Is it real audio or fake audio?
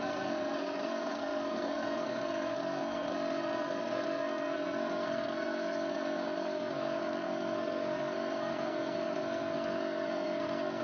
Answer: fake